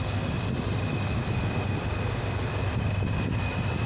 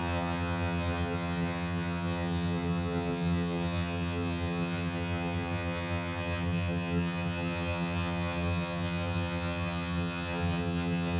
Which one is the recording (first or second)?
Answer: first